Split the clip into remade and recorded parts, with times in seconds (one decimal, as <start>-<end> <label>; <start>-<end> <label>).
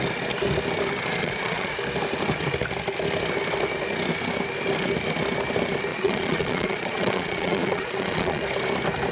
0.0-1.2 recorded; 1.2-1.7 remade; 1.7-5.9 recorded; 5.9-8.4 remade; 8.4-9.1 recorded